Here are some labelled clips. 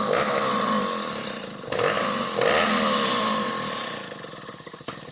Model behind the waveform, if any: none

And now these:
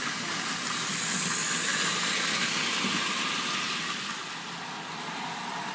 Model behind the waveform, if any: none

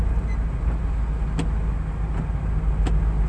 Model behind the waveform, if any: none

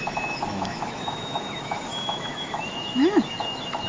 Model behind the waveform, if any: autoencoder, DAC-VAE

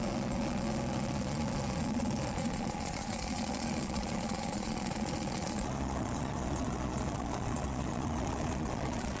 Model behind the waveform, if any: vocoder, Vocos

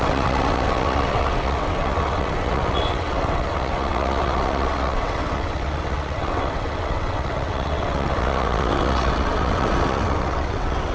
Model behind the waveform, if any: vocoder, WaveNeXt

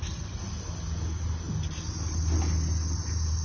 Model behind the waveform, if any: none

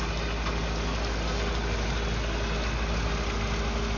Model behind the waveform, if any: none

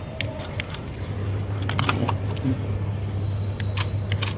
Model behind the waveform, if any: none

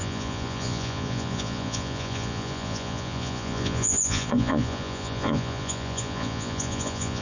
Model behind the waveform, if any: vocoder, Vocos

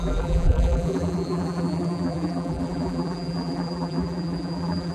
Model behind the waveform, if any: vocoder, BigVGAN v2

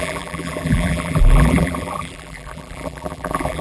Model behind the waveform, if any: vocoder, BigVGAN v2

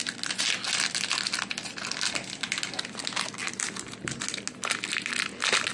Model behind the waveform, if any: none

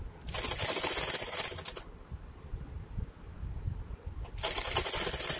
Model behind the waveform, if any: none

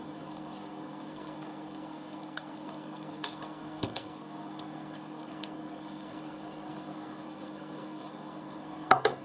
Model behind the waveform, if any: codec, SNAC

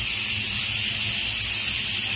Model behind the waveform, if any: none